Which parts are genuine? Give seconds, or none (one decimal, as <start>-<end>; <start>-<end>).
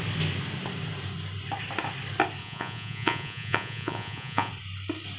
0.0-2.4; 4.5-5.2